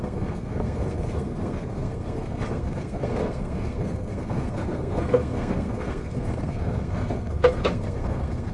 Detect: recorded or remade remade